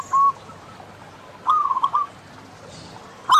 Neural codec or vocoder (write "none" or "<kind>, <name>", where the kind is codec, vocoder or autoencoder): none